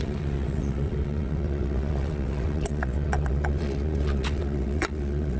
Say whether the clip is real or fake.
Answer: fake